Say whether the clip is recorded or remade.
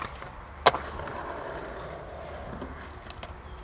recorded